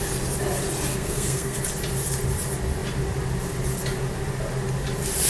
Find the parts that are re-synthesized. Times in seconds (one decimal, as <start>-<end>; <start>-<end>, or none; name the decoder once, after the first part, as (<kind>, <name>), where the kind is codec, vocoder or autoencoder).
0.9-1.6 (codec, SNAC)